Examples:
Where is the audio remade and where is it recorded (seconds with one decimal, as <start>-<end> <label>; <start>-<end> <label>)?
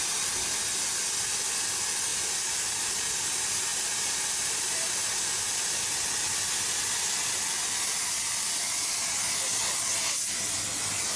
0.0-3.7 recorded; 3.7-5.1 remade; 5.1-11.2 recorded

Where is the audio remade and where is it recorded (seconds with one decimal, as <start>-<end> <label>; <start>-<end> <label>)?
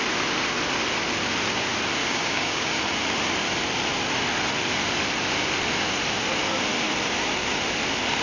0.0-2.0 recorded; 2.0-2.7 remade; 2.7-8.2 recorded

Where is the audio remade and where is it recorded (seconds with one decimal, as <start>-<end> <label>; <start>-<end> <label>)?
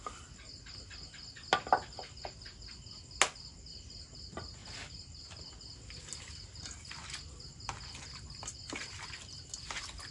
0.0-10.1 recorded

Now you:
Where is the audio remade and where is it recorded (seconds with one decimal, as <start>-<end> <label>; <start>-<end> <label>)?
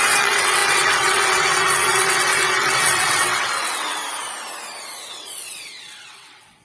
0.0-4.0 remade; 4.0-5.1 recorded; 5.1-6.6 remade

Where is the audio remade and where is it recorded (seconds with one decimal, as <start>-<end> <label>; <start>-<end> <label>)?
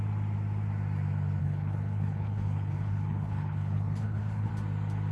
0.0-1.4 recorded; 1.4-4.5 remade; 4.5-5.1 recorded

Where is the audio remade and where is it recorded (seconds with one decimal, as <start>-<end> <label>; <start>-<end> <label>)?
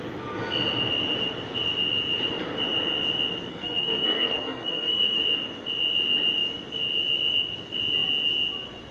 0.0-3.5 recorded; 3.5-5.2 remade; 5.2-8.9 recorded